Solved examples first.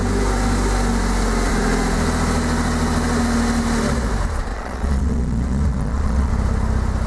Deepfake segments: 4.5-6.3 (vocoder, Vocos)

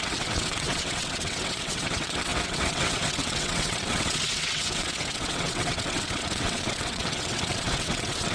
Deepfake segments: 0.0-8.3 (vocoder, WaveNeXt)

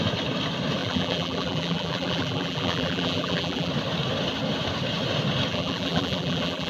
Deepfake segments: 0.8-3.7 (vocoder, BigVGAN v2); 5.5-6.7

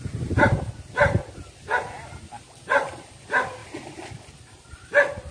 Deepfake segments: none

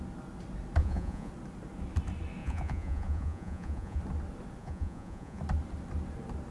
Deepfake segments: 0.8-1.3 (vocoder, Vocos); 2.4-4.0; 4.6-5.4